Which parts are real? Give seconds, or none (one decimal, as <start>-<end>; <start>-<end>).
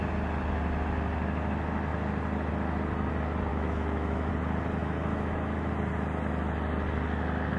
0.0-3.5; 4.3-4.8; 5.7-7.6